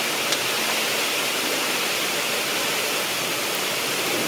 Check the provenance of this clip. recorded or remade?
recorded